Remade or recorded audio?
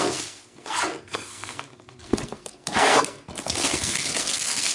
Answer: remade